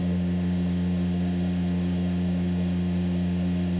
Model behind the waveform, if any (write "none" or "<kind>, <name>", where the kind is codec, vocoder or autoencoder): autoencoder, DAC-VAE